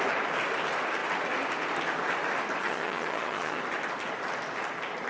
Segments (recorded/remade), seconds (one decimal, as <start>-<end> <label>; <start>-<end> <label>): 0.0-2.6 recorded; 2.6-3.6 remade; 3.6-5.1 recorded